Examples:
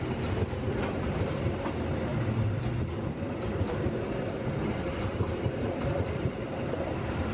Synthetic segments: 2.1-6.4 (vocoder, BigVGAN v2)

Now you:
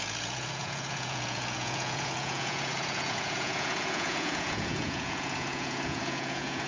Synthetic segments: 0.0-6.7 (vocoder, Vocos)

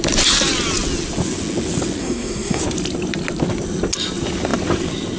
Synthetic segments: 2.0-2.6 (codec, SNAC)

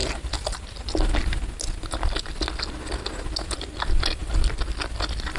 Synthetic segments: none

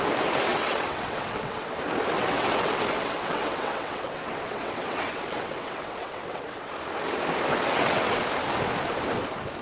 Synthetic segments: 0.5-1.7 (vocoder, WaveNeXt); 2.2-6.7; 7.7-8.2